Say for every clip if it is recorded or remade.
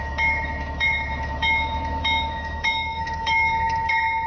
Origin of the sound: remade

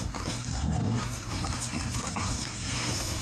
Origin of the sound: remade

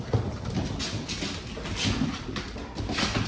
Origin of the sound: recorded